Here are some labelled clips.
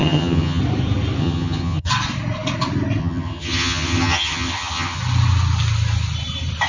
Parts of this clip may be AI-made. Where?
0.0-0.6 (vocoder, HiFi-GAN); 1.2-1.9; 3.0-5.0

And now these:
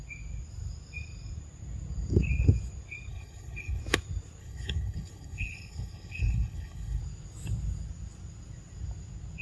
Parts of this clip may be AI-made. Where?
3.1-3.8 (codec, HILCodec); 4.4-7.0

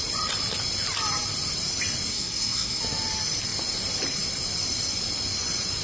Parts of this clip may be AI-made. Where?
2.1-2.8 (codec, SNAC)

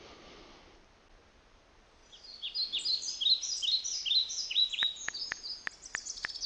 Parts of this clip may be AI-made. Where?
4.2-5.6 (vocoder, Vocos)

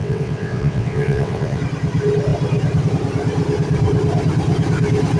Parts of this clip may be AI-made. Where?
0.0-1.6 (vocoder, WaveNeXt)

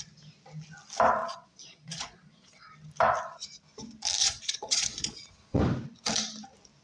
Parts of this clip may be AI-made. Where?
1.2-2.7 (vocoder, Vocos); 4.2-5.6